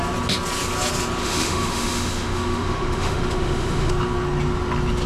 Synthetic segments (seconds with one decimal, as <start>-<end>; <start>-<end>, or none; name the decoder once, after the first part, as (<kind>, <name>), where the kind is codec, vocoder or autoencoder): 1.2-3.9 (autoencoder, DAC-VAE)